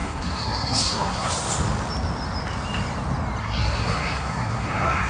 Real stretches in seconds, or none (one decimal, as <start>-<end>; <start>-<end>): 1.3-3.4